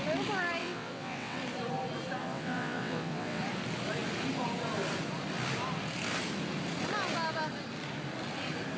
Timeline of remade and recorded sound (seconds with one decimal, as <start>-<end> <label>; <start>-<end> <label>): 0.0-0.6 recorded; 0.6-1.4 remade; 1.4-2.2 recorded; 2.2-3.4 remade; 3.4-8.8 recorded